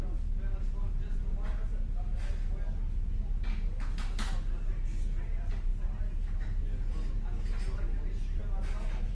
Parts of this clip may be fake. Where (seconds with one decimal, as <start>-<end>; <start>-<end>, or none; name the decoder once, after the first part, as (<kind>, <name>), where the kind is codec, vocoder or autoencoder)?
none